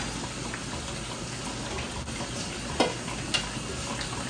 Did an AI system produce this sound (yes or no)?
no